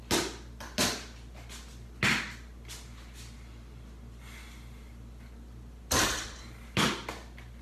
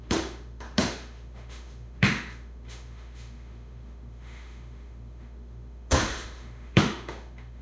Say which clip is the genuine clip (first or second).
first